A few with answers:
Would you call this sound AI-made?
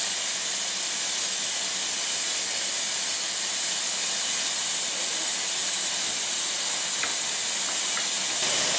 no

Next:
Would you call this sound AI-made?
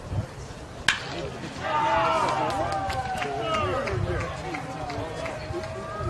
no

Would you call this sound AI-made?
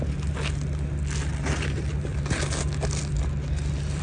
no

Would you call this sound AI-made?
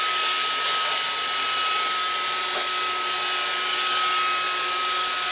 no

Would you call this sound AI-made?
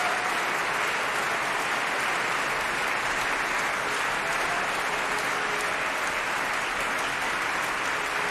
no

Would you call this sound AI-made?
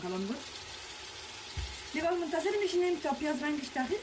no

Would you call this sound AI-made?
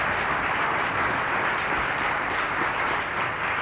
no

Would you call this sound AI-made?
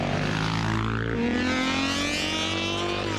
no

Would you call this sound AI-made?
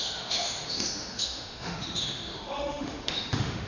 yes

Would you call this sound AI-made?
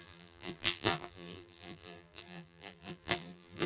yes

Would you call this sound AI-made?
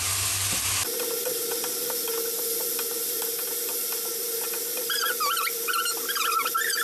no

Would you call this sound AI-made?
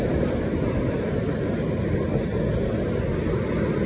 no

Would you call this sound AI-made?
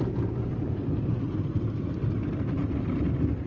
no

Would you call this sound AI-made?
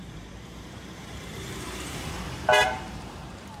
yes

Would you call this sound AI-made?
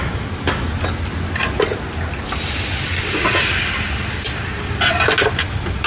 no